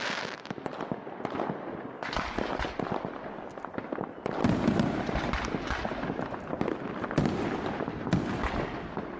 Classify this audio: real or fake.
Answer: real